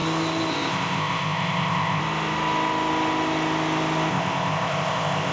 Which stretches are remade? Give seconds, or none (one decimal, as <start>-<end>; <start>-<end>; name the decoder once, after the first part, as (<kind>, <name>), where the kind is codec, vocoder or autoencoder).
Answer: 0.5-2.0 (codec, ZipCodec); 4.1-5.3

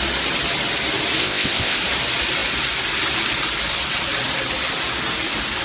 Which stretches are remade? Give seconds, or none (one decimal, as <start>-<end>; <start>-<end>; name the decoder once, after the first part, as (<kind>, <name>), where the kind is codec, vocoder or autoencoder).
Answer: 1.2-1.8 (codec, ZipCodec)

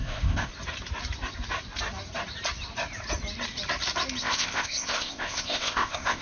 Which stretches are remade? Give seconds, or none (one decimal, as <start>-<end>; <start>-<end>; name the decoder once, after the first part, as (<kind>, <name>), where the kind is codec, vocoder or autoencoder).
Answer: 0.0-0.5 (codec, ZipCodec); 4.2-6.2

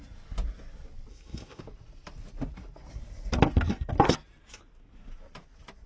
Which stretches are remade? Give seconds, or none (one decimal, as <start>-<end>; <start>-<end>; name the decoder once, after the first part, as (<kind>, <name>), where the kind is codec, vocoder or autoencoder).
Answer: 1.1-1.6 (codec, ZipCodec)

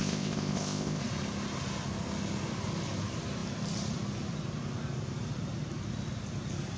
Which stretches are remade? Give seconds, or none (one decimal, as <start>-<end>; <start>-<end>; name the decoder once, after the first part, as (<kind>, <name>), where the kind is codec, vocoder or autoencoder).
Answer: 0.0-1.0 (codec, ZipCodec)

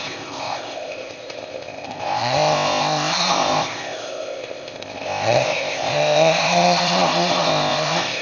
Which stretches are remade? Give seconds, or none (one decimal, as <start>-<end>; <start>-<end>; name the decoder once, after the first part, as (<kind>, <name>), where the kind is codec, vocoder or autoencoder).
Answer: 0.0-8.2 (codec, ZipCodec)

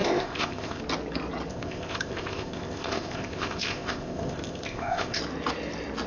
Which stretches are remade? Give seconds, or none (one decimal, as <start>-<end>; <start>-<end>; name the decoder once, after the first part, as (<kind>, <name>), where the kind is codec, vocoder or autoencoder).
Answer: 0.0-0.8 (codec, ZipCodec); 1.5-5.2

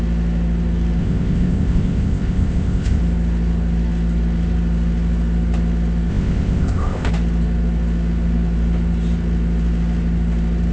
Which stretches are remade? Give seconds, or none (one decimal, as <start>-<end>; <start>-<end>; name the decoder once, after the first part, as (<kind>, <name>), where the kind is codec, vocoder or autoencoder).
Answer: 1.0-3.0 (codec, ZipCodec); 6.1-7.1